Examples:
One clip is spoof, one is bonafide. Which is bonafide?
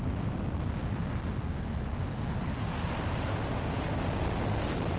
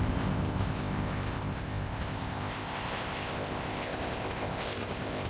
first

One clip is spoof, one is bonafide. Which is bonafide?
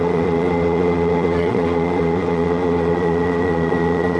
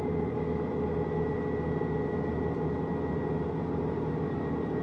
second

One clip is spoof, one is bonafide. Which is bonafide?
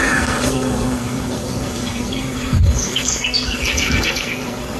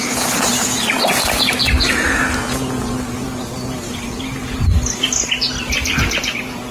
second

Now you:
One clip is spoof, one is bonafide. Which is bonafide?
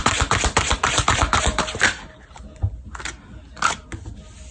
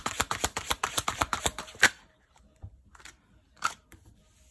first